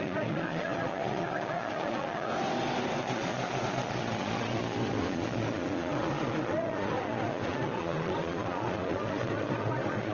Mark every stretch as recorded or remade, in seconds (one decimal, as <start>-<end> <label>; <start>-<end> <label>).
0.0-2.3 remade; 2.3-3.0 recorded; 3.0-10.1 remade